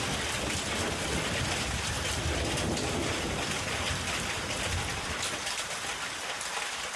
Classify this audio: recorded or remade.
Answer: recorded